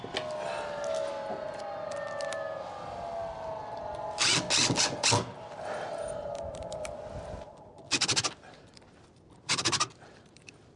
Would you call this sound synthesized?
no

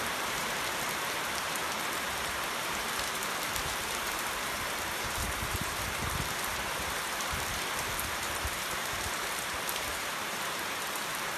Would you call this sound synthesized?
yes